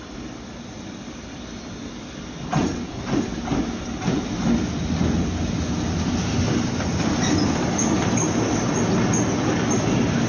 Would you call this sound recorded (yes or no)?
yes